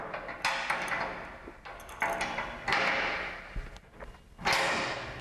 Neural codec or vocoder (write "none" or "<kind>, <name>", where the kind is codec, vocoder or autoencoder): none